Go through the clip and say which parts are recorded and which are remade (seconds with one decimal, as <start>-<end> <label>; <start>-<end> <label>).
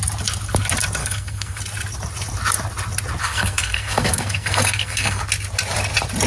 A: 0.0-1.0 recorded; 1.0-1.6 remade; 1.6-3.2 recorded; 3.2-5.2 remade; 5.2-6.3 recorded